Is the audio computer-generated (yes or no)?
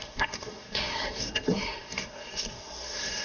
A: yes